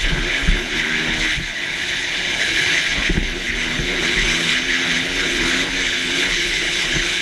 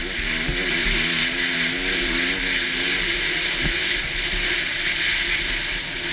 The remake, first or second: first